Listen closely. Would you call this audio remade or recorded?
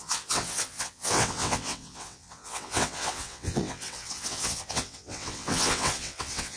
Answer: remade